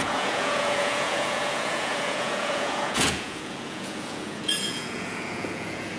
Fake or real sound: fake